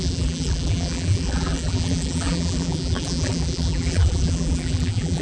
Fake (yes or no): yes